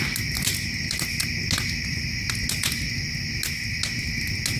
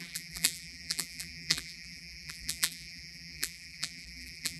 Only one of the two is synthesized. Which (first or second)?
second